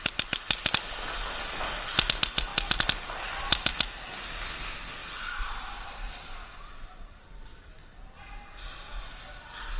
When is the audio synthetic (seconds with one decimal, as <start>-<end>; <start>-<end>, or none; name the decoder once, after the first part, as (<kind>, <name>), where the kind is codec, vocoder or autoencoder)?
5.0-8.0 (vocoder, BigVGAN v2)